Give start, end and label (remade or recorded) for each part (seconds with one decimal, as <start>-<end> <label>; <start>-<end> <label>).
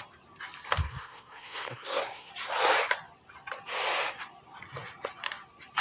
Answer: 0.0-0.8 recorded; 0.8-2.3 remade; 2.3-5.8 recorded